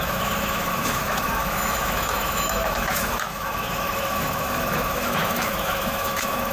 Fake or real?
fake